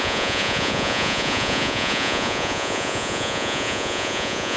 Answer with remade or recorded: remade